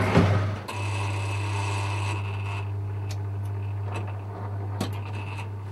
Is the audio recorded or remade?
recorded